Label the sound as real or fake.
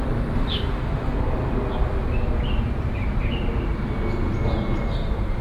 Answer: real